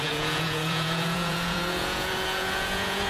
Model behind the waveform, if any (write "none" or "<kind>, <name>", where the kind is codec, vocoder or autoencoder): vocoder, Vocos